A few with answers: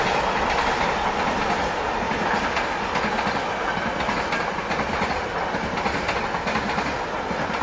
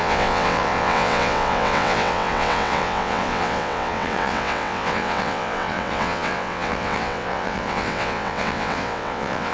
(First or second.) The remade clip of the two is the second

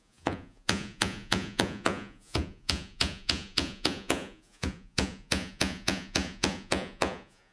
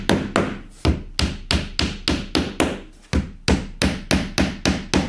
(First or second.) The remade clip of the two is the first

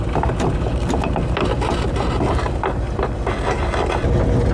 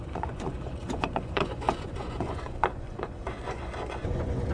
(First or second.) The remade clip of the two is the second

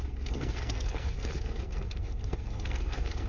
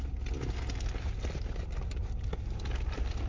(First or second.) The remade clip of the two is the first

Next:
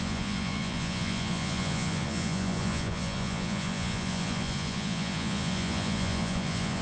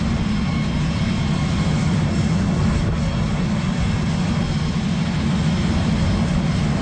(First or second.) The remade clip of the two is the first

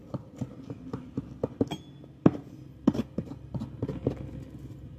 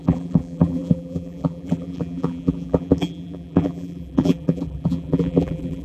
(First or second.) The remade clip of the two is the second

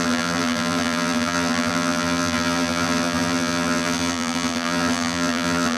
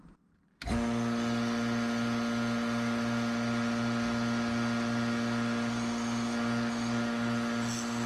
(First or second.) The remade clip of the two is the first